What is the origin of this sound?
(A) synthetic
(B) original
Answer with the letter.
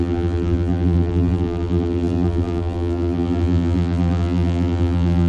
A